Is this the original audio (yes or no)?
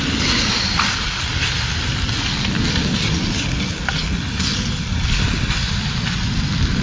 yes